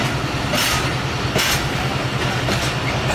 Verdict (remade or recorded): recorded